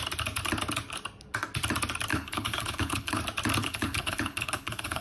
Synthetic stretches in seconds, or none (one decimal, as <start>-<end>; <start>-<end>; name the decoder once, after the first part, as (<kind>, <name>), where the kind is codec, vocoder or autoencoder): 2.1-3.2 (codec, HILCodec); 3.6-5.0